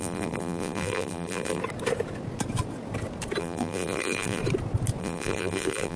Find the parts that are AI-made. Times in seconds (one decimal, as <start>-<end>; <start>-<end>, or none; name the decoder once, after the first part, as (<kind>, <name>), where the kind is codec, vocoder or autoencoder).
0.0-1.6 (vocoder, BigVGAN v2); 3.4-4.4; 5.0-6.0